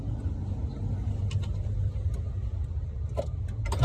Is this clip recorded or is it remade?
recorded